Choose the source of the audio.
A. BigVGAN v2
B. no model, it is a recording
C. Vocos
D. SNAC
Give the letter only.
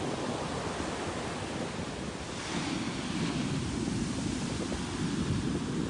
B